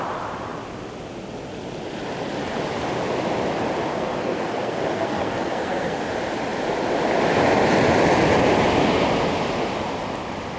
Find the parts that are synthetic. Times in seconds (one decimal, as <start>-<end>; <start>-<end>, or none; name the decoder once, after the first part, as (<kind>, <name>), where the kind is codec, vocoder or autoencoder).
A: 3.9-6.0 (codec, SNAC)